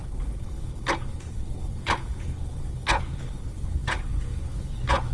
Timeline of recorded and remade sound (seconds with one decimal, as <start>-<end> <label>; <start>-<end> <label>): 0.0-5.1 remade